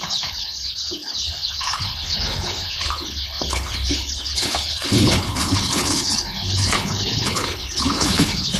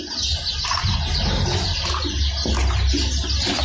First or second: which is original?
second